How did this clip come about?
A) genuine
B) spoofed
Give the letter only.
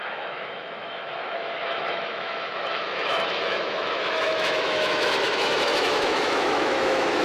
B